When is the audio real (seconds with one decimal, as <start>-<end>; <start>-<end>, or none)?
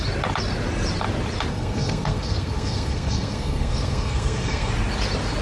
0.0-1.5; 4.7-5.4